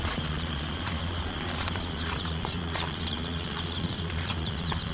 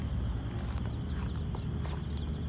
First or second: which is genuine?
second